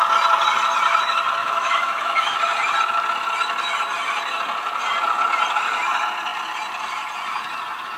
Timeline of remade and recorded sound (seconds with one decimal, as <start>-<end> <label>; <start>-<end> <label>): 0.0-1.4 recorded; 1.4-2.4 remade; 2.4-8.0 recorded